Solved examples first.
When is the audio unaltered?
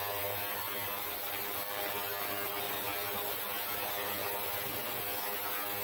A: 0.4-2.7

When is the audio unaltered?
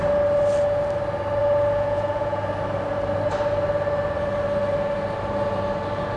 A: 0.0-1.4; 2.4-6.2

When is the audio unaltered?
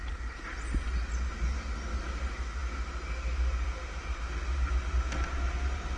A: 0.0-6.0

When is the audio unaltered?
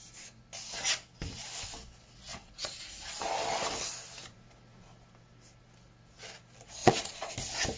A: 0.0-2.3; 3.3-6.8; 7.3-7.8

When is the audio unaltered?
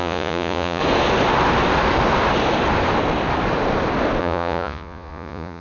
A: 0.8-4.2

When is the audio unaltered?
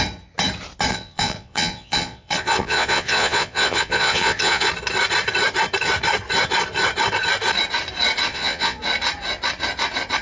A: 0.0-0.9; 4.7-8.3; 8.8-10.2